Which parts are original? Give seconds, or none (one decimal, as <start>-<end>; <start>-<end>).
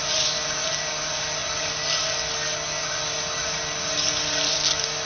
0.0-5.1